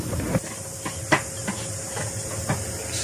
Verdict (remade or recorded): recorded